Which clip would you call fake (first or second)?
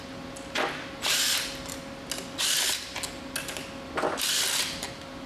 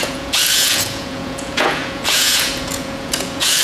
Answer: second